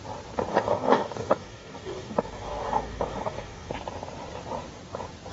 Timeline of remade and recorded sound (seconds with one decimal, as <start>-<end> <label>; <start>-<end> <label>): 0.0-0.5 recorded; 0.5-3.7 remade; 3.7-5.3 recorded